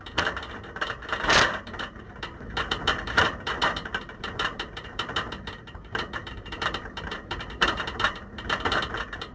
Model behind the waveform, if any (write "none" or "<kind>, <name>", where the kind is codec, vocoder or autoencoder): vocoder, BigVGAN v2